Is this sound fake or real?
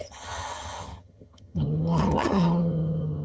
fake